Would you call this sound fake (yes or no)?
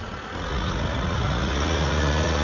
yes